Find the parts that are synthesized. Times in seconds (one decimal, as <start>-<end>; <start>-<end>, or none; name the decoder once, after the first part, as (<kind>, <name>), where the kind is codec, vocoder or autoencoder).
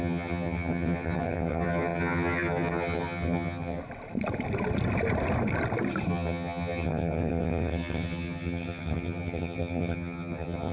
0.0-3.8 (vocoder, HiFi-GAN); 6.1-10.7